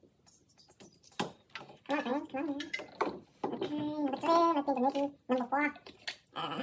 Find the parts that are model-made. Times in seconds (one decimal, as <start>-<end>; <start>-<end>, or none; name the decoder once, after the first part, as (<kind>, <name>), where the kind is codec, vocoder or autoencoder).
none